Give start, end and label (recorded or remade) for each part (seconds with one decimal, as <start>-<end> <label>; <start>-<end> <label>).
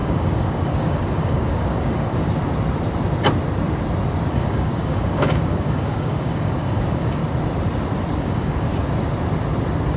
0.0-2.2 remade; 2.2-4.3 recorded; 4.3-7.2 remade; 7.2-8.2 recorded; 8.2-8.7 remade; 8.7-10.0 recorded